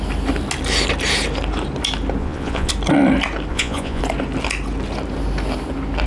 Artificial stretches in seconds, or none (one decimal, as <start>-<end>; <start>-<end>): 2.2-2.7; 3.5-4.0